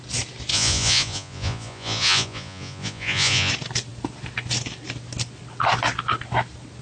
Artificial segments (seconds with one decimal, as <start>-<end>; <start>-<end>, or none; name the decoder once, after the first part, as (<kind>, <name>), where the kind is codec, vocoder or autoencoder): 0.5-3.5 (vocoder, Vocos)